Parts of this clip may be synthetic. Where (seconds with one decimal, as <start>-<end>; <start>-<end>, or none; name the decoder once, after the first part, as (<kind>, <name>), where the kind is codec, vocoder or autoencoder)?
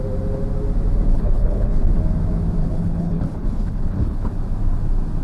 1.1-1.8 (codec, HILCodec); 2.6-4.3